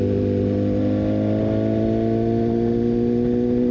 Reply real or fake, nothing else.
real